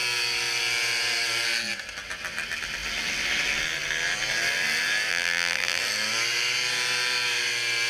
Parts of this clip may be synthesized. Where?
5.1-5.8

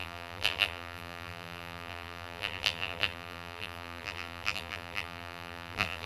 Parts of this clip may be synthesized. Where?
0.0-6.1

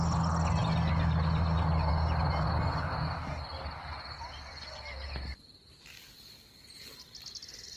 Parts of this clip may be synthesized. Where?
none